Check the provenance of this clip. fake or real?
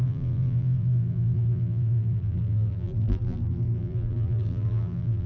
fake